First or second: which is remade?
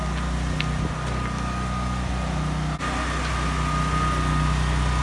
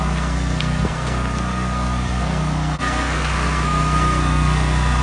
second